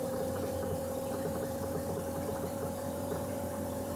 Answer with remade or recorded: remade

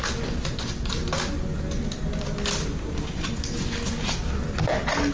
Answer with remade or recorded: recorded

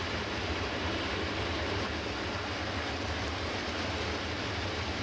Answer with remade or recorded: recorded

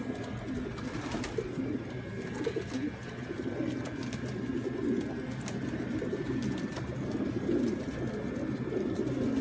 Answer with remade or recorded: recorded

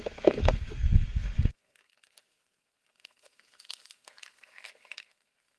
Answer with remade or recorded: remade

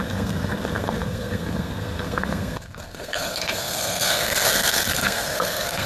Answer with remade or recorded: remade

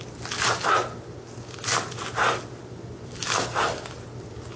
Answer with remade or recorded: recorded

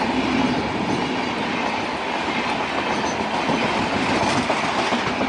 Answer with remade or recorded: recorded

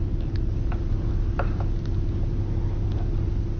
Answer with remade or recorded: recorded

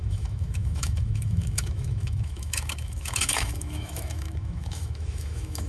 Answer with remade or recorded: remade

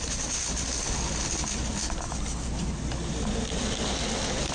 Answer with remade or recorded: recorded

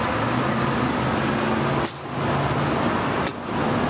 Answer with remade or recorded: recorded